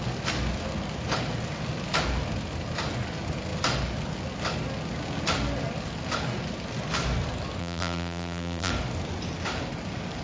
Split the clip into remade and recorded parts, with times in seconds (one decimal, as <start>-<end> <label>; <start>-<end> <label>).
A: 0.0-7.6 recorded; 7.6-8.7 remade; 8.7-10.2 recorded